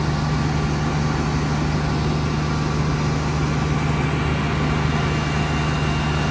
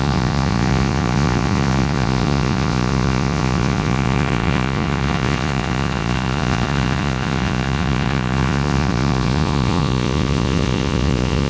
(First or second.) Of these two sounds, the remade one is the second